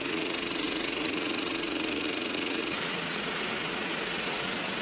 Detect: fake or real fake